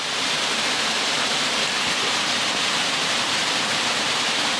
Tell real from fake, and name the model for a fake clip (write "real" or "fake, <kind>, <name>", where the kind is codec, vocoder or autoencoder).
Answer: fake, vocoder, BigVGAN v2